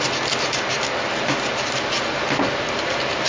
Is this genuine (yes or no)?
yes